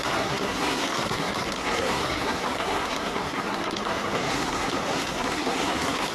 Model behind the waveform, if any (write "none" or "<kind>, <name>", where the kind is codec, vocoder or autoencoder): codec, SNAC